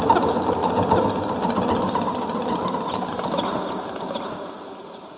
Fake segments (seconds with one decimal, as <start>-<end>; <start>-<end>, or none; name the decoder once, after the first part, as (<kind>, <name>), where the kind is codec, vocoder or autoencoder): none